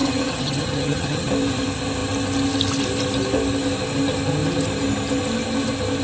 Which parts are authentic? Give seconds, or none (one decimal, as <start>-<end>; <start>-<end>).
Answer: 1.3-6.0